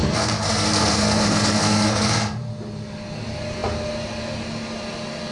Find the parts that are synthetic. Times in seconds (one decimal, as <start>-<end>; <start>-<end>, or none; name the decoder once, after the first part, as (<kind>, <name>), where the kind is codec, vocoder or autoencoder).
0.0-2.4 (codec, SNAC)